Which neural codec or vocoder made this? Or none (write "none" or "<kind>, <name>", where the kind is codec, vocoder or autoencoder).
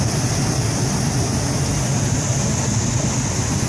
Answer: none